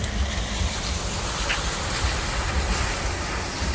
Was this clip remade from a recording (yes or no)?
no